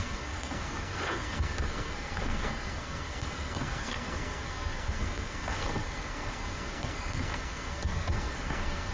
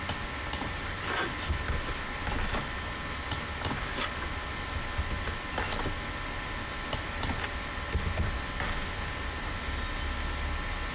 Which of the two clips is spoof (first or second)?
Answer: first